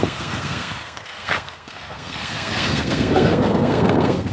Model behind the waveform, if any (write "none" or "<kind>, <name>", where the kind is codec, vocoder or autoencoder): codec, SNAC